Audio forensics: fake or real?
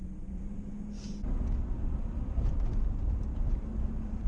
real